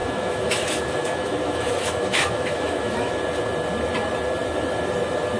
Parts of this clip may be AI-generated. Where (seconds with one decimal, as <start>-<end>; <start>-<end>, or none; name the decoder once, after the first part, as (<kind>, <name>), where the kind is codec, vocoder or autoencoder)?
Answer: 0.0-3.2 (autoencoder, DAC-VAE)